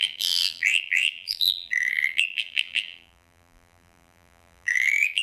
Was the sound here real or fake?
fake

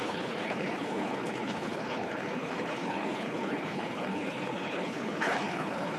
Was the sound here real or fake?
fake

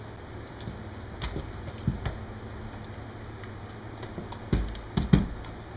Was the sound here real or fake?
real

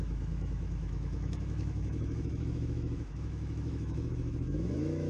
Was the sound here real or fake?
fake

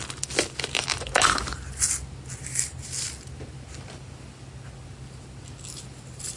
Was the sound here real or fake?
real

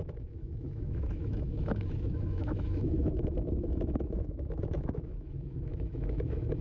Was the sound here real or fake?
fake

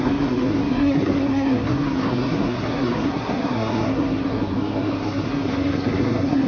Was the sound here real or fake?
fake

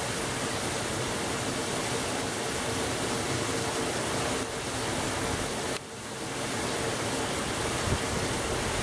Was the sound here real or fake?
real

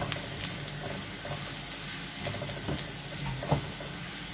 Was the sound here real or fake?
real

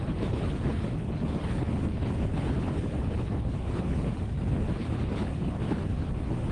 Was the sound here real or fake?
fake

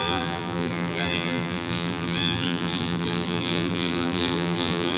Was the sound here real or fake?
fake